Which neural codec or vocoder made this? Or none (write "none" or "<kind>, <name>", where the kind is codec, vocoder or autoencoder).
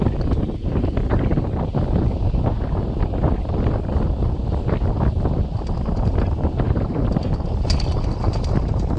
none